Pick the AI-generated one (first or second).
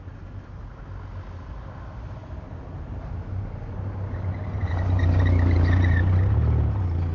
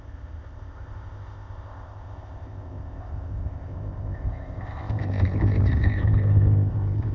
second